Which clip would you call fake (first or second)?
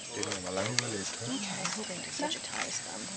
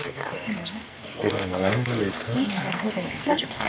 second